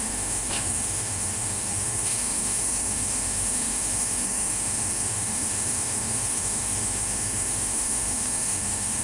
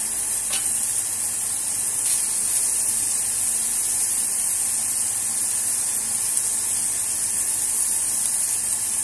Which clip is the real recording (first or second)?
second